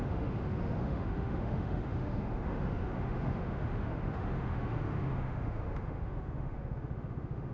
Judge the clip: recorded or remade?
remade